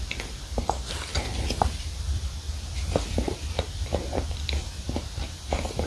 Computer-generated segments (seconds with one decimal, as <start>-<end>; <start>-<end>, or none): 1.1-4.6